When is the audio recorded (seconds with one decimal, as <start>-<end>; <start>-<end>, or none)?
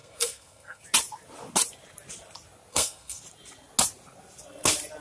0.8-2.7; 3.2-5.0